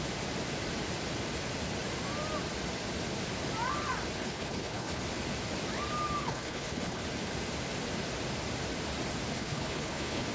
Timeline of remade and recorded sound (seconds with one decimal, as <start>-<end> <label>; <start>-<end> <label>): 0.0-4.2 recorded; 4.2-5.0 remade; 5.0-6.2 recorded; 6.2-7.0 remade; 7.0-9.4 recorded; 9.4-10.3 remade